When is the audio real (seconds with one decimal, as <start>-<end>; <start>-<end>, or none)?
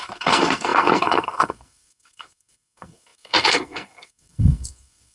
none